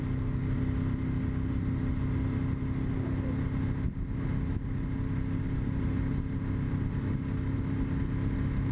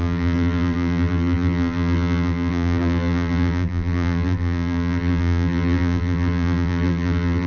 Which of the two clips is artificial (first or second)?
second